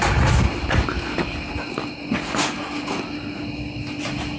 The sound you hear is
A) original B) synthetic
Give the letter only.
A